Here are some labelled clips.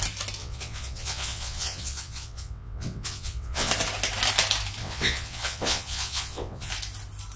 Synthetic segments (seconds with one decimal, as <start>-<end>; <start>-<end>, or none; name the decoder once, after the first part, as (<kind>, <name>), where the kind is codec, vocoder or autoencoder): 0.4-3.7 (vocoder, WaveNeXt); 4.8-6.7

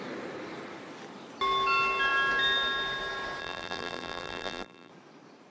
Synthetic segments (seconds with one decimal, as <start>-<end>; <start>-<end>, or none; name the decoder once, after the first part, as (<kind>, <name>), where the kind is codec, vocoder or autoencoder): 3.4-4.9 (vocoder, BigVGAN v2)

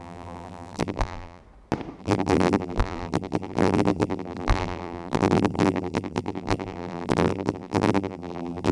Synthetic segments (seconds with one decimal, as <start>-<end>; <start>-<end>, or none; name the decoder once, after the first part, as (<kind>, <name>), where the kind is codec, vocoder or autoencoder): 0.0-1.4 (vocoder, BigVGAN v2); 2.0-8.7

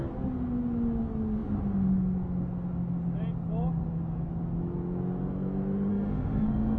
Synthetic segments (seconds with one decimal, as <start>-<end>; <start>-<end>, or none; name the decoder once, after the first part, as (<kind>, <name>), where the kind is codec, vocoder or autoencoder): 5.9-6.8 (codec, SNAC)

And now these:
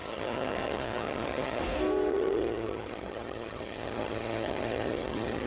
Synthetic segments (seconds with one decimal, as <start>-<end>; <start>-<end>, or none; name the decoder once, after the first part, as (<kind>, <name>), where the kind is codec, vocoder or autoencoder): 0.0-1.6 (vocoder, HiFi-GAN); 2.1-5.5

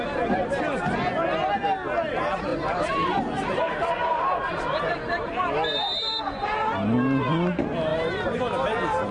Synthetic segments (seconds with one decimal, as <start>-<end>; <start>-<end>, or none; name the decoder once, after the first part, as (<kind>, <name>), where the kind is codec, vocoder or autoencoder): 2.5-6.2 (vocoder, BigVGAN v2)